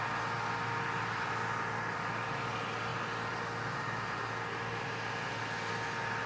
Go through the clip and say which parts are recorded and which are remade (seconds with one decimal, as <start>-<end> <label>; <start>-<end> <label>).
0.0-6.3 recorded